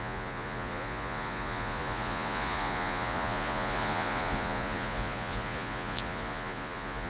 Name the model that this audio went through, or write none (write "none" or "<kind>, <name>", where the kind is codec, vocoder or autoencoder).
vocoder, Vocos